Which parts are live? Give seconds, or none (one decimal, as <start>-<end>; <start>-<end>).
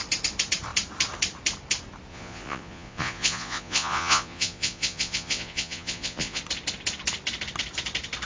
0.0-2.1; 6.4-8.3